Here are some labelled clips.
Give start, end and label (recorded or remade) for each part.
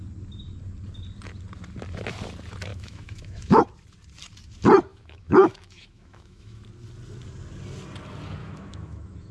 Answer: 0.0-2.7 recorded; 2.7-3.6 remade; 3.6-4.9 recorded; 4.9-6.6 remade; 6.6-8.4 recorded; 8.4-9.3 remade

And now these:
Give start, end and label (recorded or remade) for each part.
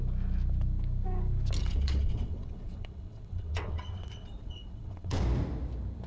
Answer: 0.0-1.6 recorded; 1.6-5.2 remade; 5.2-6.1 recorded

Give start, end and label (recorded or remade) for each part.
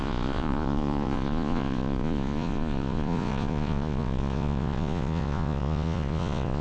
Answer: 0.0-6.6 remade